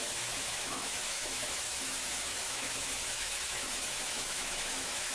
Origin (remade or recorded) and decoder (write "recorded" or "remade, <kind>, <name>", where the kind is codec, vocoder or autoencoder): remade, autoencoder, DAC-VAE